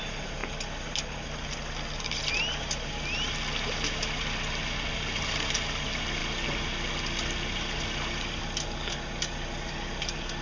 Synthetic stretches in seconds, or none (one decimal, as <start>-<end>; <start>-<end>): none